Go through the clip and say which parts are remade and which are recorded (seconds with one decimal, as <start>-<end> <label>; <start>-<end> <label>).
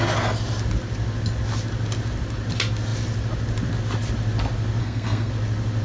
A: 0.0-4.8 recorded; 4.8-5.3 remade; 5.3-5.8 recorded